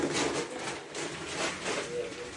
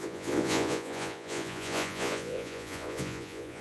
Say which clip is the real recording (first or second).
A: first